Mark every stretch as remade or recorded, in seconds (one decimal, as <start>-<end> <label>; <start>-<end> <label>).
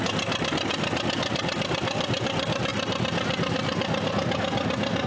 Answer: 0.0-5.1 recorded